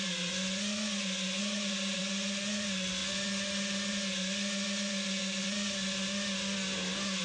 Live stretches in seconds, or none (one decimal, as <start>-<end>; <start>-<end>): 0.0-1.4; 2.0-7.2